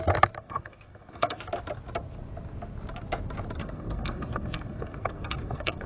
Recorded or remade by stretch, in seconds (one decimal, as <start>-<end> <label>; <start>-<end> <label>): 0.0-0.4 recorded; 0.4-1.4 remade; 1.4-3.6 recorded; 3.6-5.9 remade